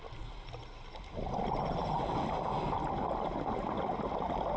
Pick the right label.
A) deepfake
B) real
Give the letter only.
B